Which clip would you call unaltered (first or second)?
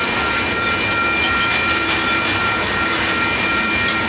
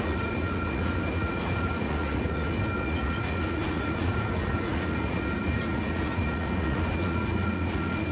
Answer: first